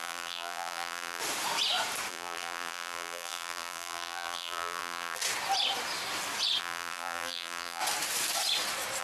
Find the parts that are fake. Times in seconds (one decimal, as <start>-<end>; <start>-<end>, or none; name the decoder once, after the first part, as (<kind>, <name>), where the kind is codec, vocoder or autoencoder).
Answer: 0.0-1.2 (vocoder, BigVGAN v2); 2.1-5.2; 6.6-7.8